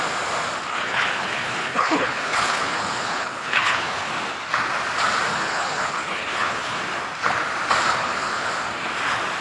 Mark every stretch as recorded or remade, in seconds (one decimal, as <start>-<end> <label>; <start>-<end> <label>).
0.0-0.7 recorded; 0.7-4.1 remade; 4.1-5.3 recorded; 5.3-6.8 remade; 6.8-7.9 recorded; 7.9-8.5 remade; 8.5-9.4 recorded